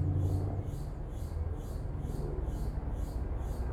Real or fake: real